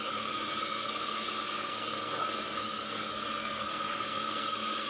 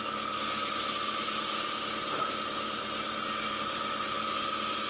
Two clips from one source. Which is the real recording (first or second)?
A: second